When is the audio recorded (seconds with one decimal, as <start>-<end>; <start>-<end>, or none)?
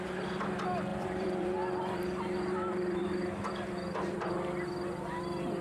0.0-0.9; 4.3-5.6